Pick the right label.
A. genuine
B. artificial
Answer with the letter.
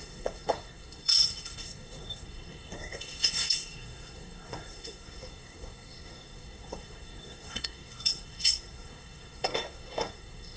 B